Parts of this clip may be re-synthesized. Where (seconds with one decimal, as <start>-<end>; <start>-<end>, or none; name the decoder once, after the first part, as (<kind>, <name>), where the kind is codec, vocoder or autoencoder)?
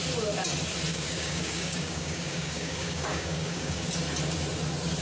0.9-3.9 (codec, DAC)